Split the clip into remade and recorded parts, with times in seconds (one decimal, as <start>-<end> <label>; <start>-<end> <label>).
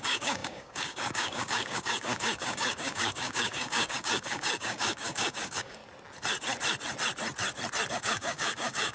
0.0-5.8 remade; 5.8-7.9 recorded; 7.9-8.9 remade